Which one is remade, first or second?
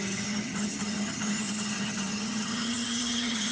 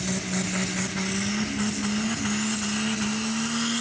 first